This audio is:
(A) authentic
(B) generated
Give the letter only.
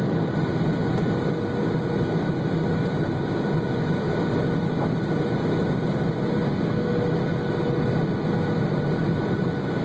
A